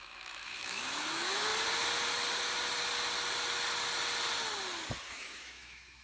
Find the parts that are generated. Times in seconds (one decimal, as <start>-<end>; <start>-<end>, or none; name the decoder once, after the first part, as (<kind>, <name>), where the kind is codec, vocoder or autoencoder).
0.0-1.5 (autoencoder, DAC-VAE); 5.1-6.0